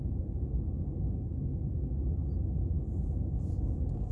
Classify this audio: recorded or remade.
recorded